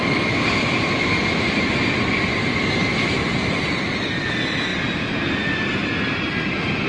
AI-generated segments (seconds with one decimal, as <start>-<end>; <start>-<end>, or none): 0.0-2.5; 3.7-6.9